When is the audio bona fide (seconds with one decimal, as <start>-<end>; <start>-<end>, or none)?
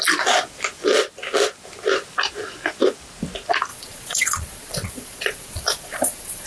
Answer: 0.0-3.7